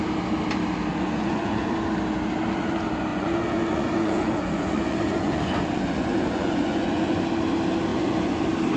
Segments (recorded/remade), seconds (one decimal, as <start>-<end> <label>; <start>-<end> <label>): 0.0-0.9 recorded; 0.9-1.7 remade; 1.7-3.1 recorded; 3.1-7.2 remade; 7.2-7.9 recorded; 7.9-8.4 remade; 8.4-8.8 recorded